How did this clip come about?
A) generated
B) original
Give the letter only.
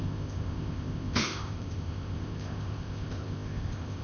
A